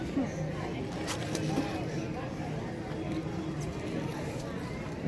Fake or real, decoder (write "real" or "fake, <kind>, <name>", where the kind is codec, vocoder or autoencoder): real